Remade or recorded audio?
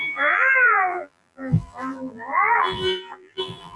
remade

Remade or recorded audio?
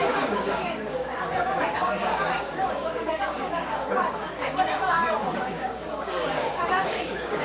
remade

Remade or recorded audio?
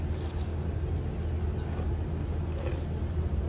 recorded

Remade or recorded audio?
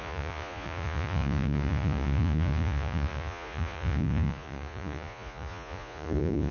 remade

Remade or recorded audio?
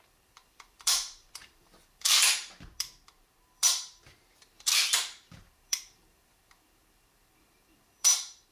remade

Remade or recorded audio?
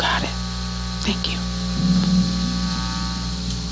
recorded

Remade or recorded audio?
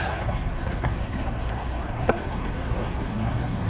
remade